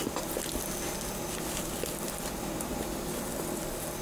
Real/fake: real